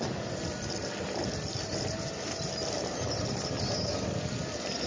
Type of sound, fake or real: real